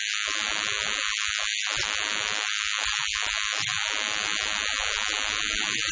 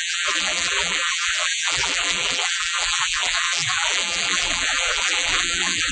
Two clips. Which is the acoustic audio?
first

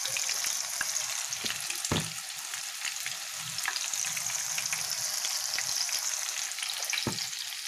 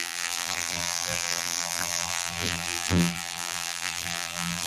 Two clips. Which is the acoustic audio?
first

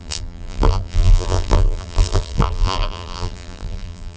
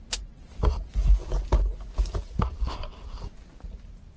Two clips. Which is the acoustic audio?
second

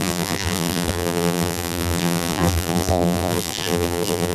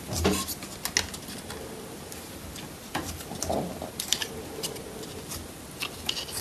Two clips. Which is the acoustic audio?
second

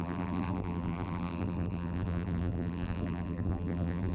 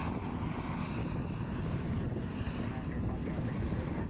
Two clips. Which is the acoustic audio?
second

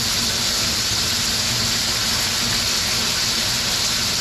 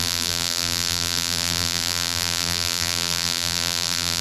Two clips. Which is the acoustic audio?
first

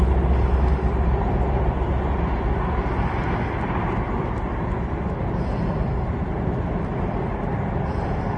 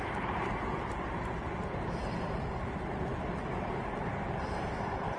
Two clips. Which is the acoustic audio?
first